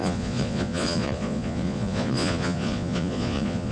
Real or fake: fake